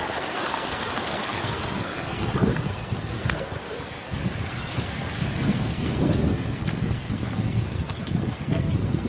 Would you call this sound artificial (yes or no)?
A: yes